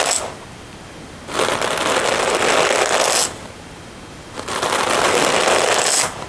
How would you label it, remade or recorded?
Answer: recorded